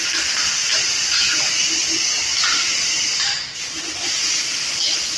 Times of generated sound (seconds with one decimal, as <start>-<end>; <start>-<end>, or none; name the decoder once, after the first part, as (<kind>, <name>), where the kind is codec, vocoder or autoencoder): 1.0-1.5 (vocoder, Vocos)